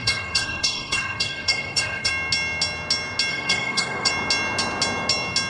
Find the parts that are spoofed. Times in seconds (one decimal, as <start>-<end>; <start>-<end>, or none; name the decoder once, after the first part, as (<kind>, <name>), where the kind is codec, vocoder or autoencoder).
0.0-2.1 (codec, SNAC); 3.3-4.1